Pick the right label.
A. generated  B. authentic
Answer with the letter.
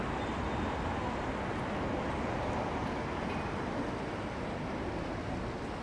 B